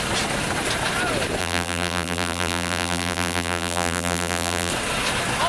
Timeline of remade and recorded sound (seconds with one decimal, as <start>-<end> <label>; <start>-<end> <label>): 0.0-1.4 recorded; 1.4-4.7 remade; 4.7-5.5 recorded